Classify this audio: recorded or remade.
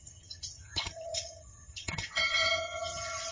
remade